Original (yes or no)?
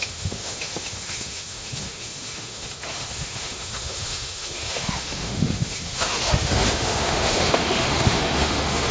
no